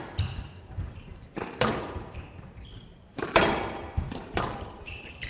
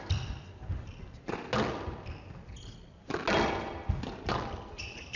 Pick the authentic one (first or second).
second